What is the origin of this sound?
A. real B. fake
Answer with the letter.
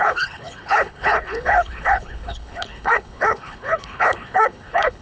B